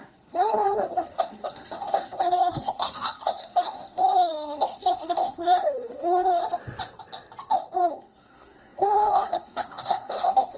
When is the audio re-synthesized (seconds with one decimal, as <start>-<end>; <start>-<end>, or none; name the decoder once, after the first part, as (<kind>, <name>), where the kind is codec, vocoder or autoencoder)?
0.0-6.4 (codec, SNAC); 7.8-10.6